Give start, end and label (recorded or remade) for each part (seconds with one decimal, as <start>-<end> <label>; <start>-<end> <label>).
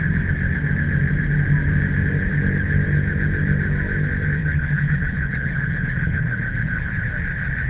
0.0-4.4 recorded; 4.4-7.0 remade; 7.0-7.7 recorded